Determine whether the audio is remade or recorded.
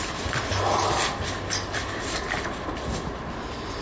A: recorded